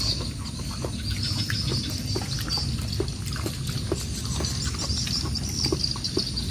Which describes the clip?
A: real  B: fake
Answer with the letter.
A